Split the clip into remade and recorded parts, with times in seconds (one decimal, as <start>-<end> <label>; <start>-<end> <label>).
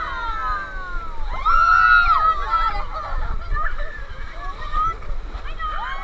0.0-3.5 recorded; 3.5-5.4 remade; 5.4-6.0 recorded